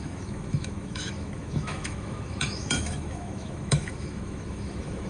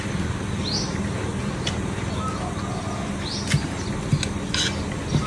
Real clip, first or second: second